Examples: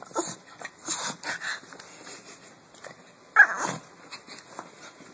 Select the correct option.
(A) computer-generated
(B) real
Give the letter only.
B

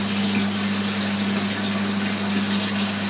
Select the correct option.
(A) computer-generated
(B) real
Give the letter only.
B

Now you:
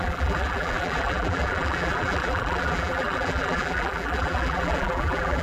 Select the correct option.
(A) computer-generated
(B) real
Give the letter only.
A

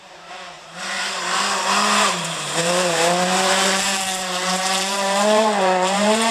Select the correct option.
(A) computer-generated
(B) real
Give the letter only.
A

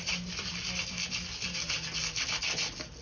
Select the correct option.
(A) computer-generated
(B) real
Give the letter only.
B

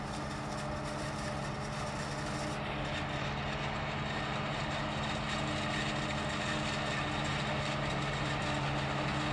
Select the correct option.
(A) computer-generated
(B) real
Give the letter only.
B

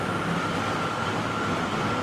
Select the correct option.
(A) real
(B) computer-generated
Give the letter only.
B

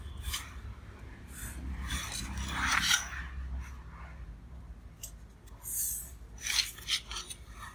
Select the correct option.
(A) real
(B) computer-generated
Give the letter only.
A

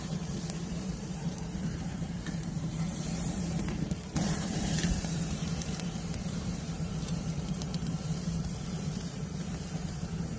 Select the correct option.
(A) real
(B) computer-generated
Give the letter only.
B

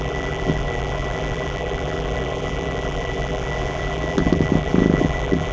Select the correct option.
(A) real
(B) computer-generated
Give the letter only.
B